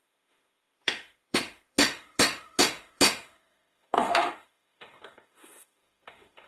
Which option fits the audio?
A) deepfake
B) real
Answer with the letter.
A